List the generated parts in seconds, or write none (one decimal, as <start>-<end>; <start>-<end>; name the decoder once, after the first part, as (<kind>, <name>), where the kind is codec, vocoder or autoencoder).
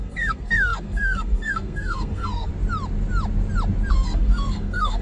0.0-2.5 (codec, SNAC); 3.9-5.0